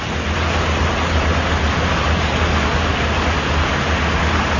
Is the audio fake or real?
real